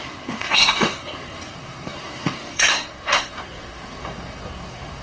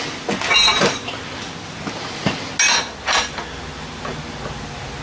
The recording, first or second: second